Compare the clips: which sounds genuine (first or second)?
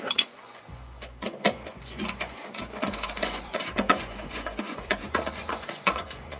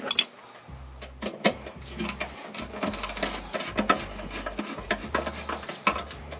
second